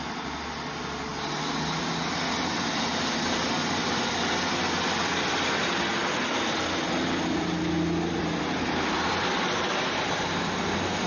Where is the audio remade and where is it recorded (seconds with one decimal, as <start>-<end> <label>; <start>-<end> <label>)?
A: 0.0-8.2 recorded; 8.2-9.1 remade; 9.1-9.7 recorded; 9.7-10.3 remade; 10.3-11.1 recorded